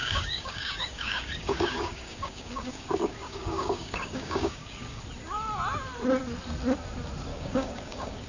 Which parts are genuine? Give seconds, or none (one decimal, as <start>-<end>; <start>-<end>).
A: 5.0-7.3